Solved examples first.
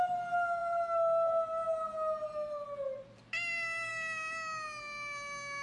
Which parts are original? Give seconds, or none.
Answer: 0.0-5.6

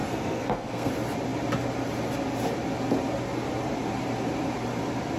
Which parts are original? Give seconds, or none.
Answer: 0.9-5.2